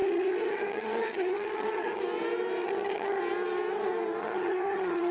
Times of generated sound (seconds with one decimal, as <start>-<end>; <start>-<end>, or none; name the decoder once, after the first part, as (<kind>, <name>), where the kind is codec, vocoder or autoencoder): 0.0-2.0 (vocoder, HiFi-GAN); 2.6-3.2; 4.2-5.1